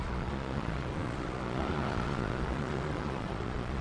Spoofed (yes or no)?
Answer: yes